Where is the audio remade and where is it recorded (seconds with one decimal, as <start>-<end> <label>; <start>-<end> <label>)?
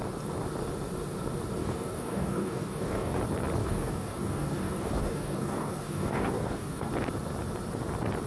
0.0-1.6 recorded; 1.6-3.2 remade; 3.2-3.6 recorded; 3.6-6.9 remade; 6.9-8.3 recorded